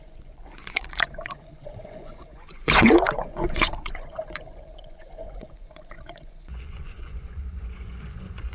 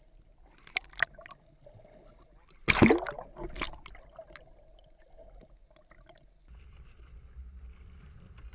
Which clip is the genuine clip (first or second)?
second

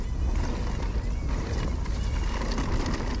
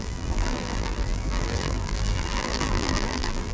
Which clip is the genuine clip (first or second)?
first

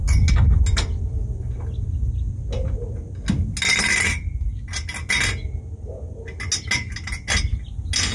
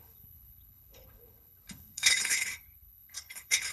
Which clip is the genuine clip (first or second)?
first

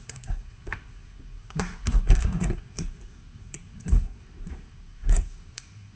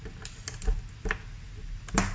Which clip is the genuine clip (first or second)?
second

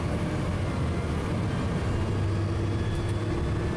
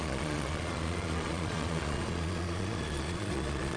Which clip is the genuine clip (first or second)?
first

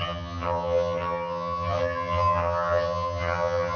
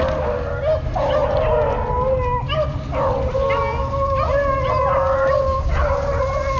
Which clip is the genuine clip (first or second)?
second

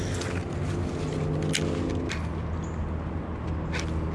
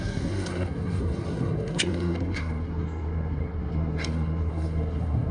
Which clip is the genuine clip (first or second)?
first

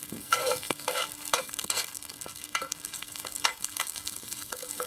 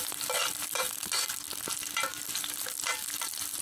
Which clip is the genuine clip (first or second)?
second